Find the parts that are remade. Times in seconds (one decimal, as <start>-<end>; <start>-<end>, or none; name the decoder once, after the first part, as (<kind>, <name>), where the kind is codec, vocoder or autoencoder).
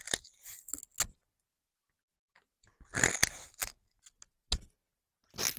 none